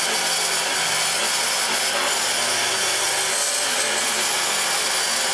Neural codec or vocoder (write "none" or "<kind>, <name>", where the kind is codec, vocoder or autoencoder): none